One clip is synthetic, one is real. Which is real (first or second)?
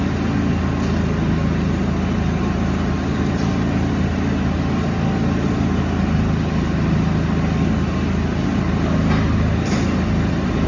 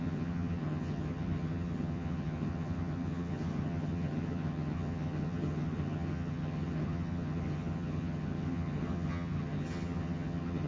first